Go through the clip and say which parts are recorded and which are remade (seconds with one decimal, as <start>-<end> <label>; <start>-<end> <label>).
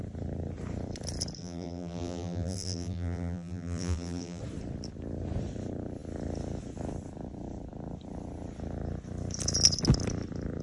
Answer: 0.0-1.4 recorded; 1.4-4.4 remade; 4.4-10.6 recorded